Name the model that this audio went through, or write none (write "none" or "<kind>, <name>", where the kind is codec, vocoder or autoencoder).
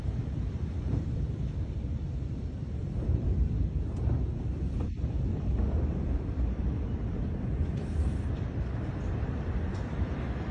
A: vocoder, BigVGAN v2